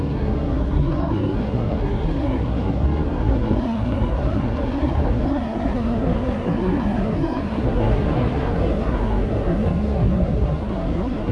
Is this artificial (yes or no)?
yes